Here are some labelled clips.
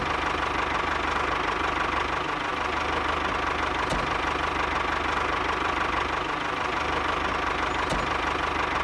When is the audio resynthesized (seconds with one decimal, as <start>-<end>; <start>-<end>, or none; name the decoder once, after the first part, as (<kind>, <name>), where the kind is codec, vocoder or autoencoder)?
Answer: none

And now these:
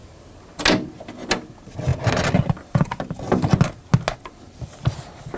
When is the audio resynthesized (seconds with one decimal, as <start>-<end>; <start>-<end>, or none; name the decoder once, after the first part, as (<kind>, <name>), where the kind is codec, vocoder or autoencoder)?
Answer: none

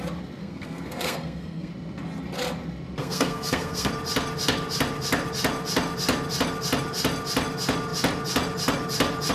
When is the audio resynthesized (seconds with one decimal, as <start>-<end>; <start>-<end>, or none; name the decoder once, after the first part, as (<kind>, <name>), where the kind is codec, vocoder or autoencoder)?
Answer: 0.4-1.7 (codec, SNAC); 3.0-3.9

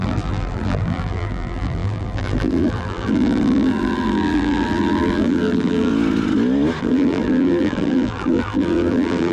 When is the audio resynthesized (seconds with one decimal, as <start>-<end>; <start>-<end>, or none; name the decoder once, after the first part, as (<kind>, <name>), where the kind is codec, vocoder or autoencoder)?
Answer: 0.0-5.9 (vocoder, BigVGAN v2); 6.8-9.3